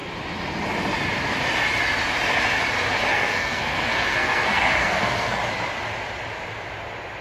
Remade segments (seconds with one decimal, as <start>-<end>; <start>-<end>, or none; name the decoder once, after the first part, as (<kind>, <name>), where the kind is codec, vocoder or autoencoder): 3.1-5.4 (codec, SNAC)